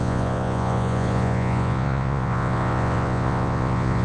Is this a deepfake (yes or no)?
yes